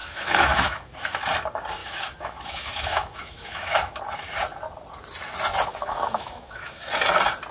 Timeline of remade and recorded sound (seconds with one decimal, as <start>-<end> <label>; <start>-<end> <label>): 0.0-1.2 remade; 1.2-1.8 recorded; 1.8-4.0 remade; 4.0-5.7 recorded; 5.7-6.9 remade; 6.9-7.5 recorded